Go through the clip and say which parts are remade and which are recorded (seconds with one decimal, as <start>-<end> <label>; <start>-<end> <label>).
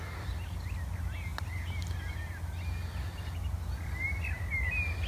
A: 0.0-5.1 recorded